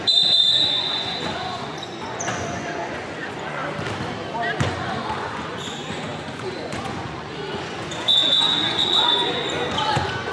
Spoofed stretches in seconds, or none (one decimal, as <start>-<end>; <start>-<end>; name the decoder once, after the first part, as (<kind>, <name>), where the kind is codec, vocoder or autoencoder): 0.0-3.6 (vocoder, Vocos); 4.6-10.3